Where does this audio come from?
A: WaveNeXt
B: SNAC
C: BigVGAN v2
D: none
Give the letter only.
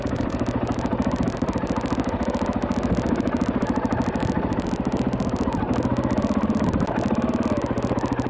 D